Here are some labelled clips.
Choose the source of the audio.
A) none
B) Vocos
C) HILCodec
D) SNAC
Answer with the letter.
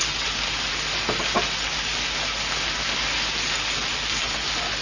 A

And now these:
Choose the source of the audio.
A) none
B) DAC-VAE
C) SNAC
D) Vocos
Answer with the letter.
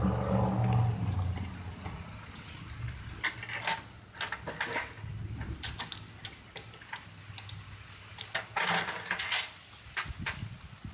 A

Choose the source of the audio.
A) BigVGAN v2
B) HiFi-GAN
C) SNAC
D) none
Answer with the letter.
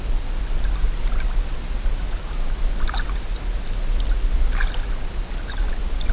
D